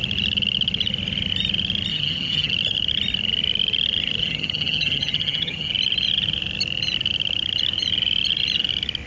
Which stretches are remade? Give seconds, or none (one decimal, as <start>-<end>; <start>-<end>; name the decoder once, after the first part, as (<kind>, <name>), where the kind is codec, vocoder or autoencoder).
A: 1.9-2.5 (vocoder, HiFi-GAN); 4.2-5.7